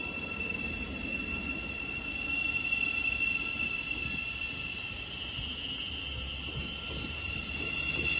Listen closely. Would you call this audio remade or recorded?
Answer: recorded